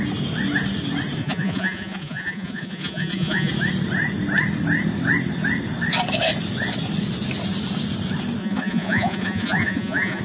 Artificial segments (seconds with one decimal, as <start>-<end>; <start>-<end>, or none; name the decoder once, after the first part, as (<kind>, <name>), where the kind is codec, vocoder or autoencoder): 1.2-3.5 (vocoder, Vocos); 8.4-10.2